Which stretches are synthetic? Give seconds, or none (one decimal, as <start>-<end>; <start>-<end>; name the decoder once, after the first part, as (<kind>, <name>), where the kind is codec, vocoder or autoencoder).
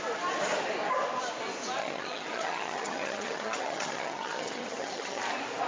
1.8-5.2 (vocoder, HiFi-GAN)